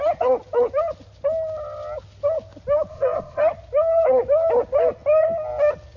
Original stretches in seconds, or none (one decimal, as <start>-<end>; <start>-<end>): 0.0-2.9; 3.4-6.0

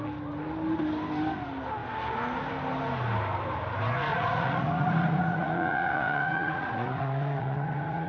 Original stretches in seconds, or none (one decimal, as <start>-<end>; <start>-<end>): 0.0-4.1